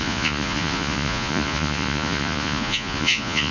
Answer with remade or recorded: remade